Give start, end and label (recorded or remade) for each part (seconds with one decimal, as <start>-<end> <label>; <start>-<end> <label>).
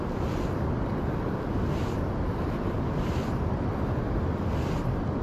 0.0-0.9 remade; 0.9-4.0 recorded; 4.0-5.2 remade